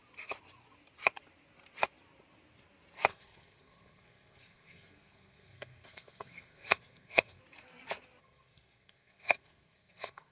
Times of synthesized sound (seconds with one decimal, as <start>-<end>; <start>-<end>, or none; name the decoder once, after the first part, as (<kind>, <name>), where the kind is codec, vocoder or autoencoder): 3.1-7.4 (codec, SNAC); 8.2-10.3